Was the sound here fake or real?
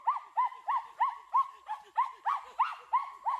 real